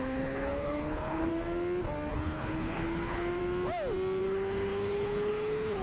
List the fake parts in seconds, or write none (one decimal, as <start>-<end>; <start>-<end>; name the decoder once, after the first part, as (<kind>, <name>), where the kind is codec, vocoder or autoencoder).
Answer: 0.0-1.3 (codec, HILCodec); 2.1-3.4; 4.2-5.8